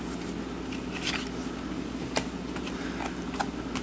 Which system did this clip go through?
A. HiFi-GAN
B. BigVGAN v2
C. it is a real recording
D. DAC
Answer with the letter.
C